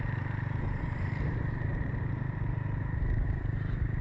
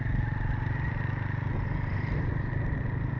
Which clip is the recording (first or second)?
second